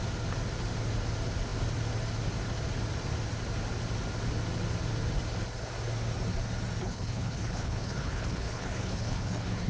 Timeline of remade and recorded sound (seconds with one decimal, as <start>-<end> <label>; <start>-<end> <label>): 0.0-6.8 recorded; 6.8-9.7 remade